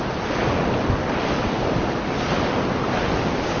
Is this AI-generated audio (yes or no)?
no